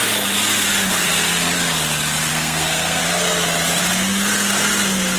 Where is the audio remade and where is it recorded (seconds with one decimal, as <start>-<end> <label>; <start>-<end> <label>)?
0.0-2.3 recorded; 2.3-3.0 remade; 3.0-5.2 recorded